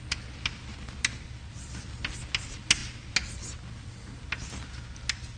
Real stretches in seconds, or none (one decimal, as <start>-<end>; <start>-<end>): 0.0-5.4